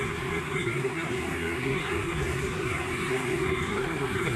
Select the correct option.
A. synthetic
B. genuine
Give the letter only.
A